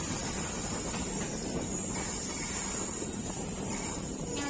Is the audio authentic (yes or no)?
yes